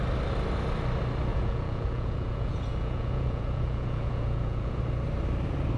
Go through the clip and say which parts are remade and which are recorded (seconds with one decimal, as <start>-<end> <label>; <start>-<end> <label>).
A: 0.0-1.3 recorded; 1.3-4.8 remade; 4.8-5.8 recorded